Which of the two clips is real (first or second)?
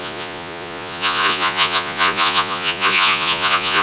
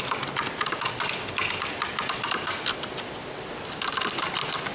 second